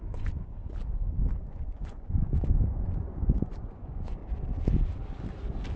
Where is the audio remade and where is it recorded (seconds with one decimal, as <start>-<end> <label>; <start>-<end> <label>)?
0.0-0.6 remade; 0.6-1.3 recorded; 1.3-4.2 remade; 4.2-5.8 recorded